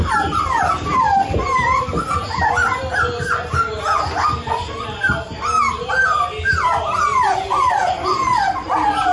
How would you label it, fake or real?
real